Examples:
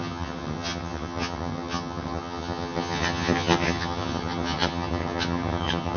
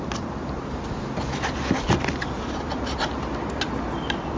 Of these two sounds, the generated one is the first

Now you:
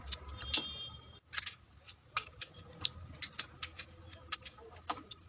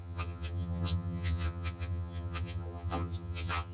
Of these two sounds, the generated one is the second